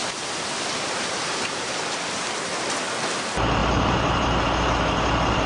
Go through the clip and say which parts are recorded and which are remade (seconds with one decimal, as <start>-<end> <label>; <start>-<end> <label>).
0.0-1.7 remade; 1.7-3.6 recorded; 3.6-4.4 remade; 4.4-5.5 recorded